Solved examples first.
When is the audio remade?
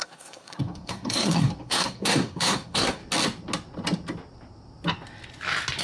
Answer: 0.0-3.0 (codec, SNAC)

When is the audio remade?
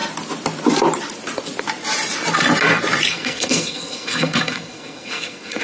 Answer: 3.1-5.6 (codec, SNAC)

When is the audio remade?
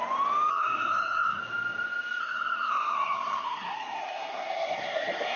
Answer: 0.5-1.4 (codec, SNAC); 2.2-5.4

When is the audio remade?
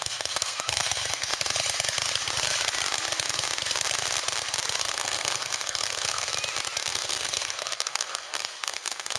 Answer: 0.0-1.3 (codec, SNAC); 4.8-6.3; 6.9-9.2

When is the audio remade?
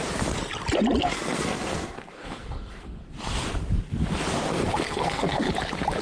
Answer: 1.0-3.0 (codec, SNAC); 4.5-5.5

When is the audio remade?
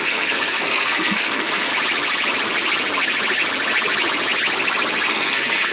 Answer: 0.0-1.7 (codec, SNAC); 5.1-5.7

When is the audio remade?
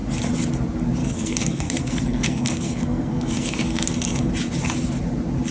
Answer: 1.0-4.3 (codec, SNAC)